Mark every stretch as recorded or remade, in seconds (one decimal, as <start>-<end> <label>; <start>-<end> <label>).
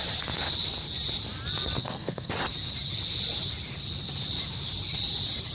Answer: 0.0-1.8 recorded; 1.8-2.3 remade; 2.3-5.5 recorded